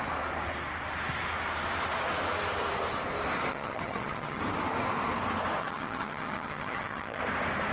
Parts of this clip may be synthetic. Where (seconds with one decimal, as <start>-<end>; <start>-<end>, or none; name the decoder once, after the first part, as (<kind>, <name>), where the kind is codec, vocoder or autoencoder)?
3.5-4.4 (vocoder, HiFi-GAN); 5.6-7.2